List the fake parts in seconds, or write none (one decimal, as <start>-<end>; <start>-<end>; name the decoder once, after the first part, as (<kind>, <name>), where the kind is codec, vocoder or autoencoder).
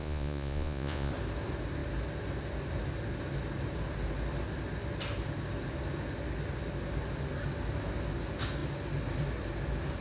0.0-1.1 (vocoder, Vocos)